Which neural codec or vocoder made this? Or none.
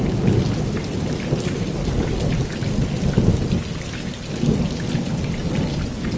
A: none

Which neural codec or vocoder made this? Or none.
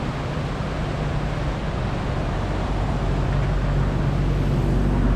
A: none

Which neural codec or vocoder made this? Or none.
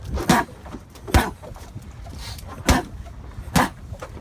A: none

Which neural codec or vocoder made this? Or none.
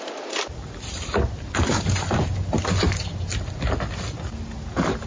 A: none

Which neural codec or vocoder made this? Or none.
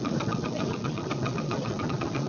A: vocoder, Vocos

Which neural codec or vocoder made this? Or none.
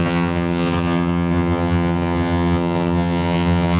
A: vocoder, HiFi-GAN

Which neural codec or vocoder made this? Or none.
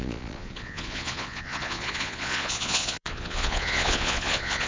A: vocoder, Vocos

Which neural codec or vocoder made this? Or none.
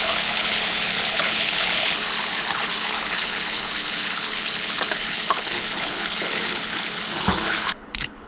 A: codec, HILCodec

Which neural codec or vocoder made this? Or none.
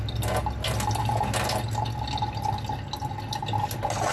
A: none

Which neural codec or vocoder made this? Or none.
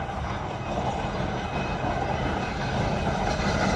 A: none